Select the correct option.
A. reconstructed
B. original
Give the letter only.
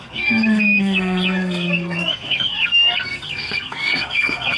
A